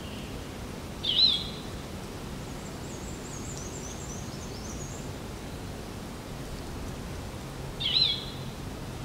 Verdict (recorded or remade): recorded